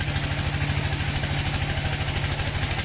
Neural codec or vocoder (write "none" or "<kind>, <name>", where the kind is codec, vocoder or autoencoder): none